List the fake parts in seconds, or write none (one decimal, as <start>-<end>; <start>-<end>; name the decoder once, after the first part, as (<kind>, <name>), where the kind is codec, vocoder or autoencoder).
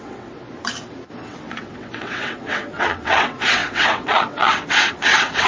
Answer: 0.0-0.5 (vocoder, WaveNeXt); 1.3-5.5